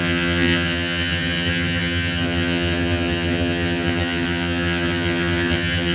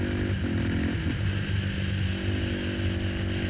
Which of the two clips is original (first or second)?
second